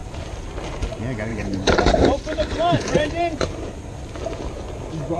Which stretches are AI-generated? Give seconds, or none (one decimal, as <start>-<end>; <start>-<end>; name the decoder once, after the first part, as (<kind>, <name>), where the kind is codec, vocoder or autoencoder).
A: 1.3-4.0 (vocoder, BigVGAN v2)

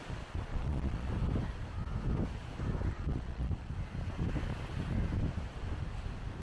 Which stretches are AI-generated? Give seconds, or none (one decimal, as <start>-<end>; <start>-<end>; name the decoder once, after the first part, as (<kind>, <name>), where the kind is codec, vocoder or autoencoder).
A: 0.5-1.1 (vocoder, Vocos); 2.9-3.7

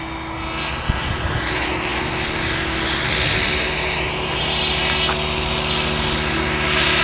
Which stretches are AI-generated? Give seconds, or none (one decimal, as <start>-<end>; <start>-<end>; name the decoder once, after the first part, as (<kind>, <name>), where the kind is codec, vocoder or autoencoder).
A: none

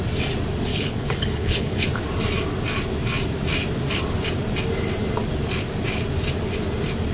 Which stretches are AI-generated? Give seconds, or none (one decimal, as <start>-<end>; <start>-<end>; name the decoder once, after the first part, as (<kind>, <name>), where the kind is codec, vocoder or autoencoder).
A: 0.7-1.9 (codec, HILCodec)

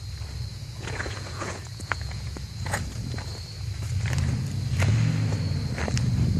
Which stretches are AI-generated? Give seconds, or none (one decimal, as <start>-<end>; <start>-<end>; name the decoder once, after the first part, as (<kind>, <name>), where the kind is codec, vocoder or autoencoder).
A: 0.5-2.8 (vocoder, Vocos)

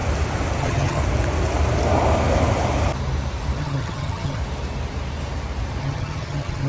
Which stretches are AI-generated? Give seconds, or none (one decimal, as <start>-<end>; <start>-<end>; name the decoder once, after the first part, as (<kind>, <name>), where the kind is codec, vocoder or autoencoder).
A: 0.6-1.0 (vocoder, HiFi-GAN); 3.6-4.4; 5.8-6.7